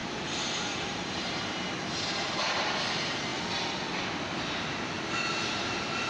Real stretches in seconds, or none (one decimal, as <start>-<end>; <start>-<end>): 3.3-5.5